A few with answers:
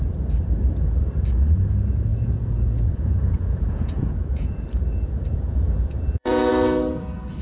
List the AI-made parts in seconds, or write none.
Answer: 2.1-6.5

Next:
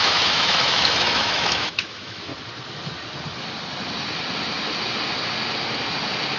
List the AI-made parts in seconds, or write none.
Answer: 0.0-2.3

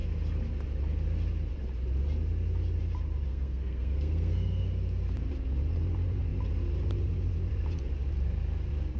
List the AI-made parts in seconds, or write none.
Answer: 3.3-4.6

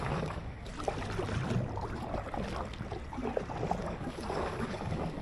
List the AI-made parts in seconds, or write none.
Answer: 0.0-0.7; 3.8-5.2

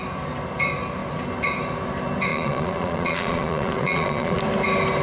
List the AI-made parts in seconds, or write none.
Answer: 2.3-4.4

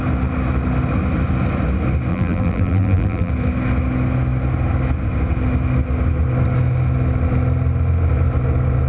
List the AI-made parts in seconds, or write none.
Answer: 2.1-3.3